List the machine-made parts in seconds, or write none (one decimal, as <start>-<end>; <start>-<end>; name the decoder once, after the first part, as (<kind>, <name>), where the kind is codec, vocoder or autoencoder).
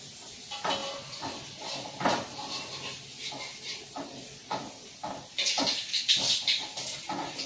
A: none